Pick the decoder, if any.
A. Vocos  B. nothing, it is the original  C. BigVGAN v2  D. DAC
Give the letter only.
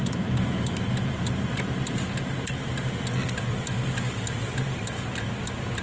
B